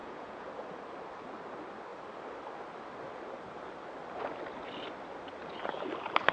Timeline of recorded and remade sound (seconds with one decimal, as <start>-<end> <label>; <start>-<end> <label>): 0.0-0.5 remade; 0.5-6.3 recorded